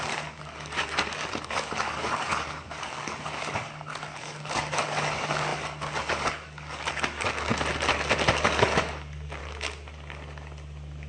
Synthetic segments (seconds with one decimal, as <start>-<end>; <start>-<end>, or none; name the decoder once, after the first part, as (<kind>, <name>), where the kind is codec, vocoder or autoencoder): 0.0-7.5 (codec, DAC); 8.3-9.4